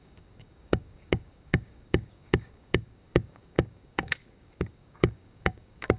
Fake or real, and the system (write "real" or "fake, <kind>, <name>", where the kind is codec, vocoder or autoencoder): fake, codec, DAC